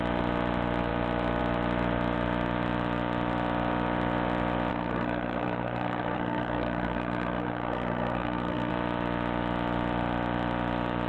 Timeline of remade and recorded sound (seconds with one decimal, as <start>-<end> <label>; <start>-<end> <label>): 0.0-4.7 recorded; 4.7-8.7 remade; 8.7-11.1 recorded